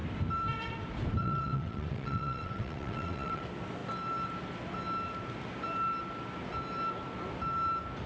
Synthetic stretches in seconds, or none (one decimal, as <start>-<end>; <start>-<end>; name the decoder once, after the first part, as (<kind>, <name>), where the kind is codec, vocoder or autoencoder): 1.2-3.4 (vocoder, WaveNeXt)